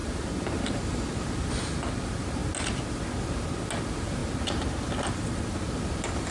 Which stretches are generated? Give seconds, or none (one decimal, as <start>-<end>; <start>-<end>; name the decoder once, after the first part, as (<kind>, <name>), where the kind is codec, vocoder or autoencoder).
none